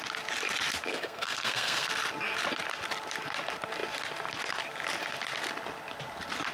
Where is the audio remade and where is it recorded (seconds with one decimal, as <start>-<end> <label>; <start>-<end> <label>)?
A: 0.0-0.9 recorded; 0.9-1.9 remade; 1.9-6.5 recorded